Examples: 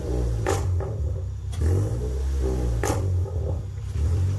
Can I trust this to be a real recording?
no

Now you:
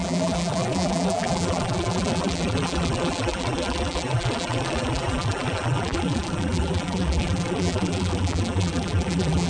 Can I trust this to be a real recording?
no